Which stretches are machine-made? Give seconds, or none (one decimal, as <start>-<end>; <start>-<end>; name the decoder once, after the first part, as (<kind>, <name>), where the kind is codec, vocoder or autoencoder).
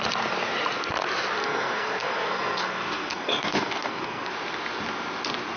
1.4-4.3 (codec, SNAC)